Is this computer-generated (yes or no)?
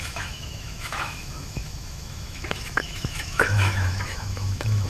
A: yes